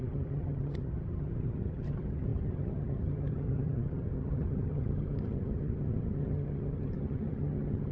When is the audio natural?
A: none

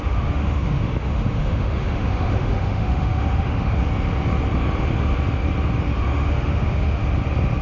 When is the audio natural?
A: 3.8-5.8; 7.0-7.6

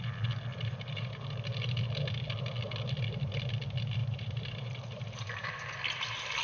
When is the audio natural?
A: 0.0-0.5; 1.4-4.0; 5.5-6.4